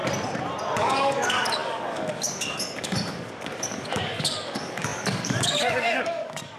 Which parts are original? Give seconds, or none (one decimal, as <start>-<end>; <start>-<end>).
0.0-0.8